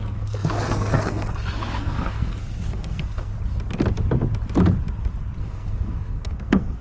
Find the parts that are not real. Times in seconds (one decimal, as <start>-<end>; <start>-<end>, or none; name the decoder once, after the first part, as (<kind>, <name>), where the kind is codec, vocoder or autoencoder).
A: 0.0-3.3 (codec, SNAC); 5.4-6.8